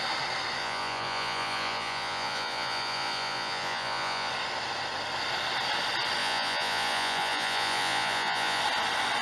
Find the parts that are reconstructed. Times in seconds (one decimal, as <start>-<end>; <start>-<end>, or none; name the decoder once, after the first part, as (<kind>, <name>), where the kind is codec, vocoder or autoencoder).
0.6-4.3 (vocoder, Vocos); 6.2-8.6

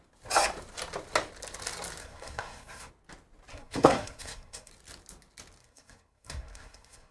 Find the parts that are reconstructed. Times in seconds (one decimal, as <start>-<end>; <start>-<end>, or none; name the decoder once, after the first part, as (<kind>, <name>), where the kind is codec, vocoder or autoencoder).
2.0-2.9 (codec, SNAC); 3.5-4.7; 5.6-7.1

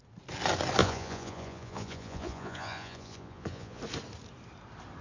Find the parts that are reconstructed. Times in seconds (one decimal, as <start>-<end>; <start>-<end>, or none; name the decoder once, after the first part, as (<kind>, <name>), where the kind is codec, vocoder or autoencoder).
0.8-3.8 (vocoder, Vocos)

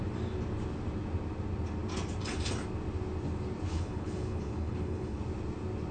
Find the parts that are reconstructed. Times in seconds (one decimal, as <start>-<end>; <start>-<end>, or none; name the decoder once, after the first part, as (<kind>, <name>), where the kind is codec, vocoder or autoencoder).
3.7-5.2 (codec, HILCodec)

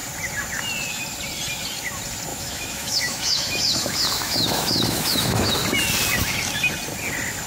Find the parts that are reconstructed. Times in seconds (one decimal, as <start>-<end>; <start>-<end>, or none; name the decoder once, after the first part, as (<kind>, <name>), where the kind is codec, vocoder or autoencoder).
2.3-5.5 (autoencoder, DAC-VAE)